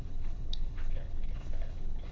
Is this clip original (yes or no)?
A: no